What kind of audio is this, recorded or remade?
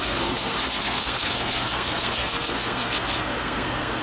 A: remade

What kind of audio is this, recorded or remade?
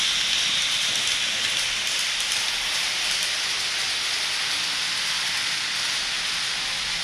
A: recorded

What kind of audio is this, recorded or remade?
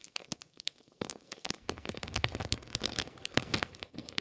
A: remade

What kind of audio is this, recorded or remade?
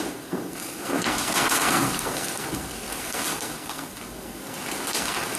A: remade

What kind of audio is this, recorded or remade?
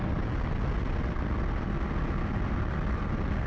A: recorded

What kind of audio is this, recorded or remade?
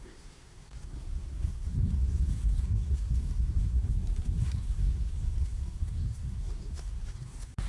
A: remade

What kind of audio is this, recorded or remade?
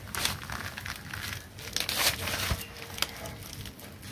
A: recorded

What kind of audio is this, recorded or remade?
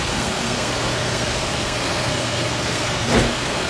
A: remade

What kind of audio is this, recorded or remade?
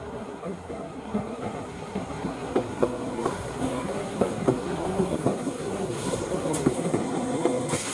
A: remade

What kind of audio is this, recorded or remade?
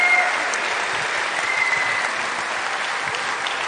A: recorded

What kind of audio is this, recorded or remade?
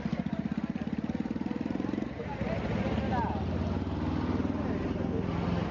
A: recorded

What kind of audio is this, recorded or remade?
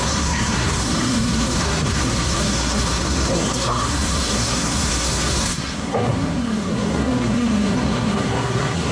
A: remade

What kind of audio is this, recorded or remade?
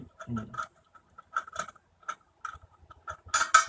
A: recorded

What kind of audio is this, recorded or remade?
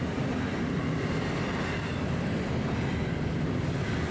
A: recorded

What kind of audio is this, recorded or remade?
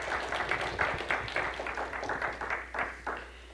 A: recorded